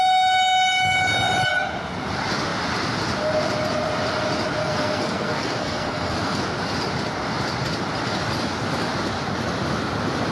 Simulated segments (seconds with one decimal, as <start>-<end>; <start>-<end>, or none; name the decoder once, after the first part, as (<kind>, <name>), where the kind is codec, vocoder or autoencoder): 4.6-6.4 (codec, SNAC)

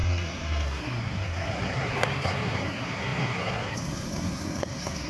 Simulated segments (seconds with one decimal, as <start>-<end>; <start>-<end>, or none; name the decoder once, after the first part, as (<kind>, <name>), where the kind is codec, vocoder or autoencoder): 0.0-5.1 (codec, SNAC)

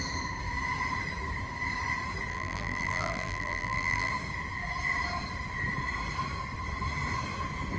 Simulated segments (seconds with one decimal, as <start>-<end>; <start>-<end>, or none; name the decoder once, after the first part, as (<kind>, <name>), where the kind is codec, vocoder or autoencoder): 2.3-4.1 (vocoder, BigVGAN v2)